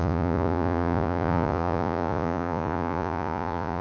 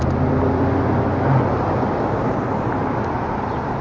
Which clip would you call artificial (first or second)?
first